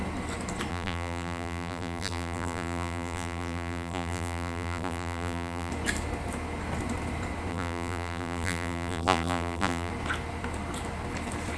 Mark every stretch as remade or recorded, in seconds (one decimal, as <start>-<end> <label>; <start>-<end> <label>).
0.0-0.7 recorded; 0.7-5.7 remade; 5.7-7.5 recorded; 7.5-9.9 remade; 9.9-11.6 recorded